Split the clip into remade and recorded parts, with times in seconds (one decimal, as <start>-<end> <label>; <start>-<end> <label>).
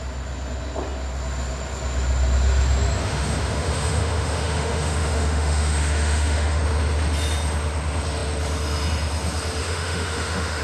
0.0-3.0 recorded; 3.0-6.6 remade; 6.6-9.6 recorded; 9.6-10.6 remade